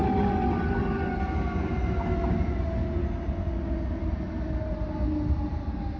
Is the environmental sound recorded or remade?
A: recorded